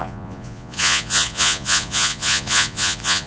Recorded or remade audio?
remade